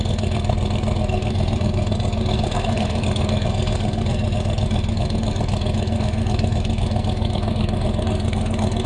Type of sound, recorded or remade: remade